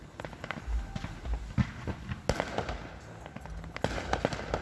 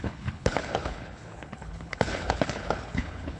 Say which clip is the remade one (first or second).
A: second